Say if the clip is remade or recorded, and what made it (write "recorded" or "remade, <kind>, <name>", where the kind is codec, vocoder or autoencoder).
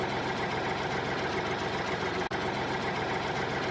recorded